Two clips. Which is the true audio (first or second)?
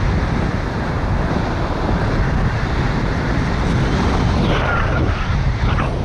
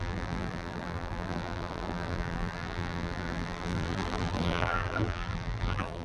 first